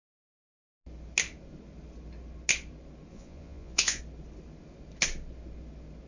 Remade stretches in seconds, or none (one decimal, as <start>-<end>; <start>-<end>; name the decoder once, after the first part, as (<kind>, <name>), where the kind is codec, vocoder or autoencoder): 3.1-4.0 (vocoder, Vocos)